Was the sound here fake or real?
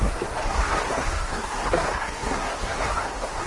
fake